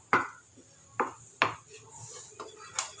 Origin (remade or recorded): recorded